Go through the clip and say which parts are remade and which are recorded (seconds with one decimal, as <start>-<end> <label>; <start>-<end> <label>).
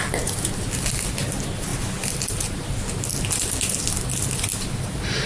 0.0-5.3 recorded